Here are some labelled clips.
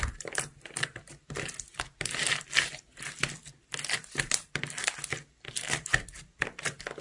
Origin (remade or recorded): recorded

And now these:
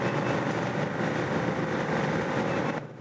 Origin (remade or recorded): recorded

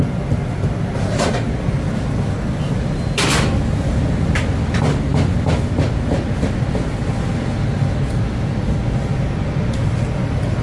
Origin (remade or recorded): recorded